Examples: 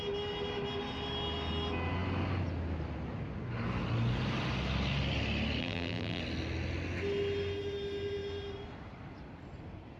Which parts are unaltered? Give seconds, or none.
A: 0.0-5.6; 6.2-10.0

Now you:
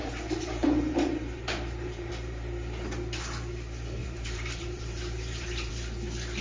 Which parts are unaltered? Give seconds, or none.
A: 2.1-4.0; 5.7-6.4

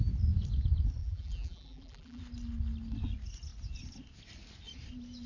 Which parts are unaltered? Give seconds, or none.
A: 0.0-1.0; 2.2-5.3